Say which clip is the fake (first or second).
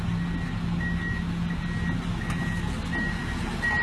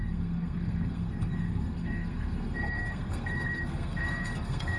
second